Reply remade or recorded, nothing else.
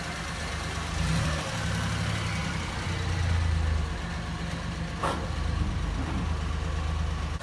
recorded